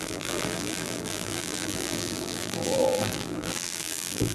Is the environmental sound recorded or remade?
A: remade